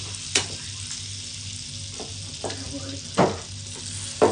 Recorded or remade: recorded